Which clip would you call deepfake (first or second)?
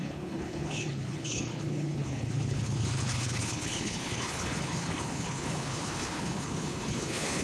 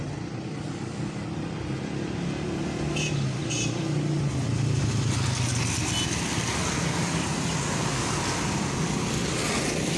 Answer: first